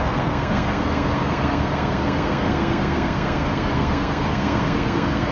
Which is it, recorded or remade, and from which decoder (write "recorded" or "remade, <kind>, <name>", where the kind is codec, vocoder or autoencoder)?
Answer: remade, codec, SNAC